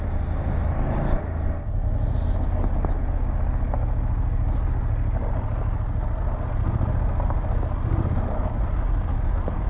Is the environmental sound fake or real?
real